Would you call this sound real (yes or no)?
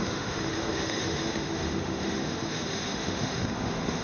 no